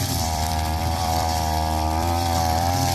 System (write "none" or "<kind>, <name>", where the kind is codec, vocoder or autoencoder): vocoder, BigVGAN v2